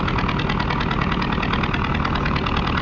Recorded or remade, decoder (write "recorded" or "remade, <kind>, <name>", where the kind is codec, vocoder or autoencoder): recorded